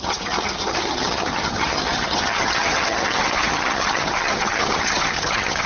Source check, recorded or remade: remade